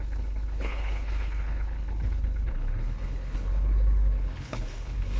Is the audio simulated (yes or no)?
yes